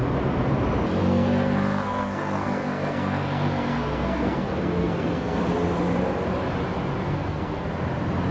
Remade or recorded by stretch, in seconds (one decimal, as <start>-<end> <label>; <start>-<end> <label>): 0.0-1.0 recorded; 1.0-5.4 remade; 5.4-7.0 recorded; 7.0-7.7 remade; 7.7-8.3 recorded